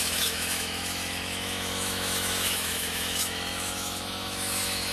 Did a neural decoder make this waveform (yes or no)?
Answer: yes